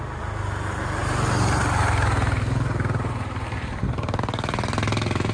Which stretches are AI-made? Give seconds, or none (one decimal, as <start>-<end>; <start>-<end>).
none